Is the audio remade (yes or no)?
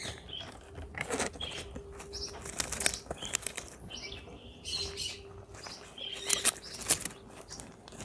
no